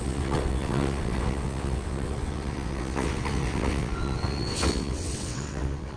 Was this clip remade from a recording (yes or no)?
yes